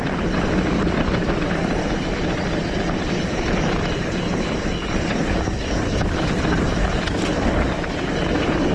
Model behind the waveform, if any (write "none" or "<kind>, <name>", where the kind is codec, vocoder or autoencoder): vocoder, BigVGAN v2